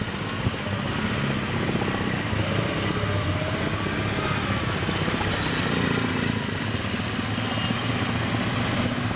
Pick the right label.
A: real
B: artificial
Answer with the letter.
A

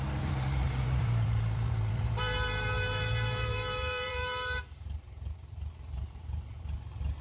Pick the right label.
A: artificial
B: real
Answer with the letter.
A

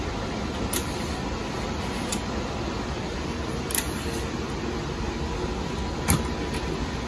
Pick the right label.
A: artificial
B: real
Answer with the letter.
B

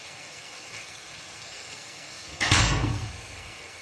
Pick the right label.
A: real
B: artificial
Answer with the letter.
B